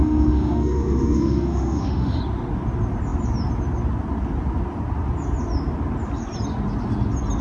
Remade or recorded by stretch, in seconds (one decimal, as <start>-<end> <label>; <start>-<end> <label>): 0.0-2.2 remade; 2.2-7.4 recorded